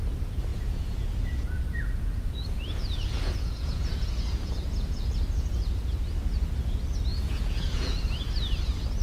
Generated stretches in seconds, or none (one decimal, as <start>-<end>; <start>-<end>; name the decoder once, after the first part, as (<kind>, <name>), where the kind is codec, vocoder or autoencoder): 0.5-5.1 (vocoder, Vocos); 7.1-8.0